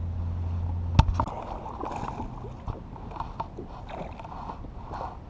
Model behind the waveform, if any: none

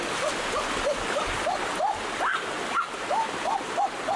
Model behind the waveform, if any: none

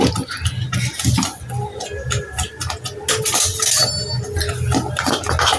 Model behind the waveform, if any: none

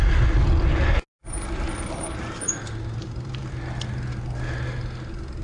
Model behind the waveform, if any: none